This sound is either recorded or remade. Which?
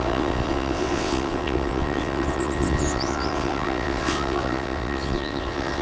remade